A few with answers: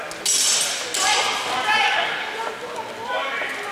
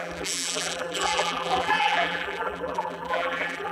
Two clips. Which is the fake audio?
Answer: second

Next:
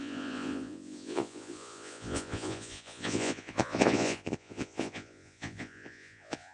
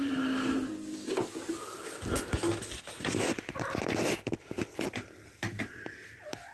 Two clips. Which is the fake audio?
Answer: first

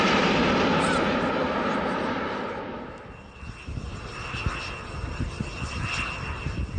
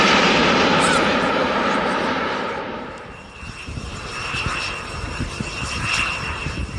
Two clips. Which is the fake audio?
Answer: second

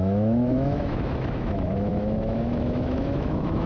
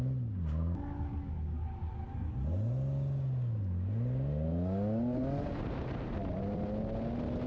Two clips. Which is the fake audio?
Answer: first